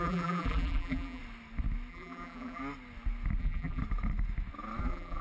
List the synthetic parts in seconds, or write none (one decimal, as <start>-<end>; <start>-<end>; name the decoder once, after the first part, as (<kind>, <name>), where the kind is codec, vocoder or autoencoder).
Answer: 0.0-1.2 (vocoder, BigVGAN v2); 1.9-2.6; 3.4-3.8; 4.8-5.2